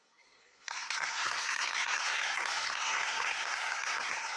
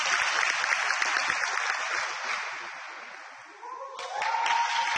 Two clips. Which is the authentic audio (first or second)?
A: second